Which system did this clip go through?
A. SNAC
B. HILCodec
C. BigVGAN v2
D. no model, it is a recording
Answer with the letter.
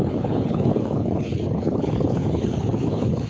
B